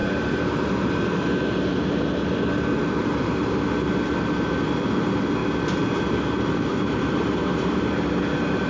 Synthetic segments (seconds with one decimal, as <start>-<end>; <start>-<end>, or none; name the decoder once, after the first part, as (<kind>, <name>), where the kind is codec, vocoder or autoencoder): 6.7-7.7 (vocoder, BigVGAN v2)